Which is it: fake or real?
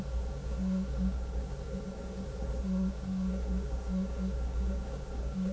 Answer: fake